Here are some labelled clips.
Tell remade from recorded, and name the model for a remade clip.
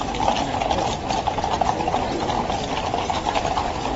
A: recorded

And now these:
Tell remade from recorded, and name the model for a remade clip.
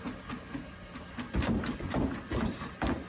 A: recorded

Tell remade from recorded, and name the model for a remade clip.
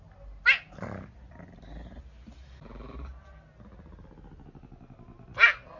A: recorded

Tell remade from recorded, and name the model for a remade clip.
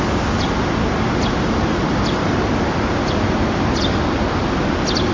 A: recorded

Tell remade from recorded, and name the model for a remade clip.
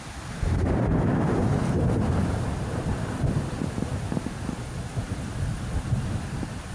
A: recorded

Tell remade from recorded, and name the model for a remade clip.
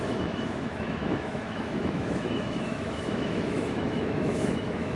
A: remade, autoencoder, DAC-VAE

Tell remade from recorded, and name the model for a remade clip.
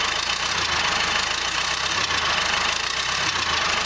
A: recorded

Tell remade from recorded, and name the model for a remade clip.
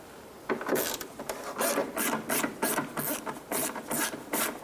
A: recorded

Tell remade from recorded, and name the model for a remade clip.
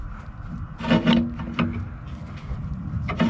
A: recorded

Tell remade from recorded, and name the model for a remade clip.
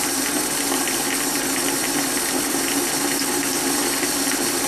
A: recorded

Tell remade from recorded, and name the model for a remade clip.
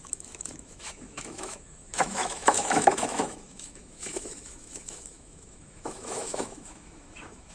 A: remade, autoencoder, DAC-VAE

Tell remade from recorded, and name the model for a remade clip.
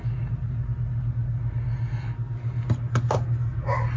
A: recorded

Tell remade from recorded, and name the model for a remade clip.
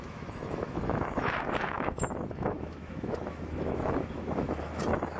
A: remade, autoencoder, DAC-VAE